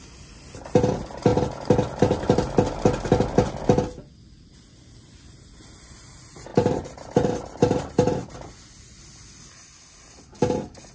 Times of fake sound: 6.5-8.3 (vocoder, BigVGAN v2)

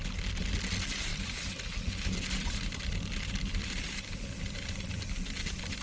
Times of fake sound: 1.1-4.6 (vocoder, BigVGAN v2)

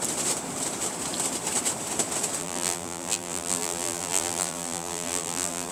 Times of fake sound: 2.4-5.7 (vocoder, BigVGAN v2)

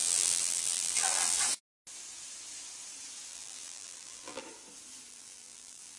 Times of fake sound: 0.0-1.4 (vocoder, BigVGAN v2); 3.3-4.4; 5.1-6.0

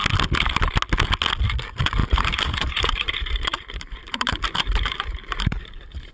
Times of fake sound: 2.0-6.1 (vocoder, BigVGAN v2)

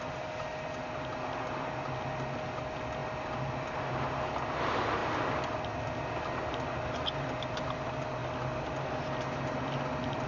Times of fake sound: none

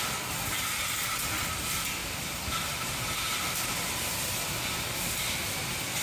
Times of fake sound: 2.0-4.3 (vocoder, BigVGAN v2)

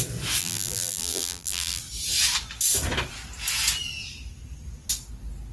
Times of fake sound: 0.4-1.8 (vocoder, BigVGAN v2)